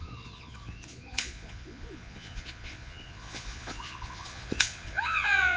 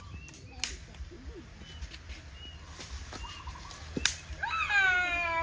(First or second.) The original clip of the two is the second